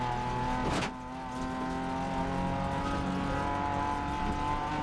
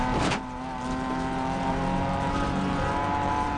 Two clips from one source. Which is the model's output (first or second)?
second